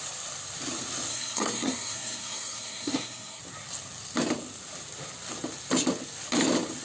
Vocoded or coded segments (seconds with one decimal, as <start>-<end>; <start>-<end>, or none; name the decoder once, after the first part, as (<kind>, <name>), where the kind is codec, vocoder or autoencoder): 1.1-3.4 (codec, SNAC)